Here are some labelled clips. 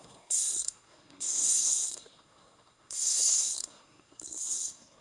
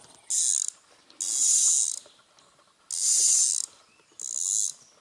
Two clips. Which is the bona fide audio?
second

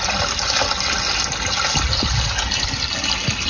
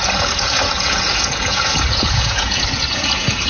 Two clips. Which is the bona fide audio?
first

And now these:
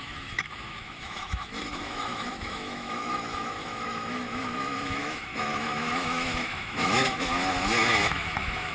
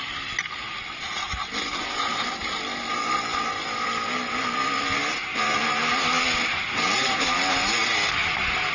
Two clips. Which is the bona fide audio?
second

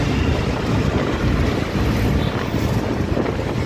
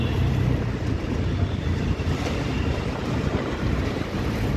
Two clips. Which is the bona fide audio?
first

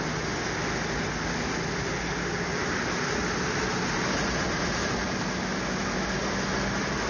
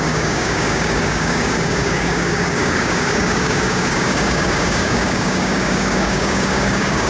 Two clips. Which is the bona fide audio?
first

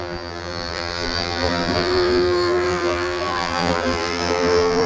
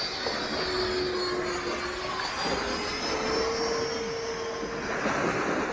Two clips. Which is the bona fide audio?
second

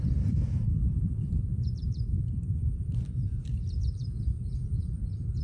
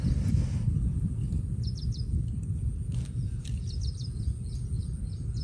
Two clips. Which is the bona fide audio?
second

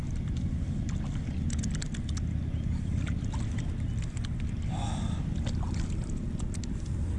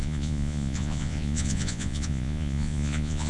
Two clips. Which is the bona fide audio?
first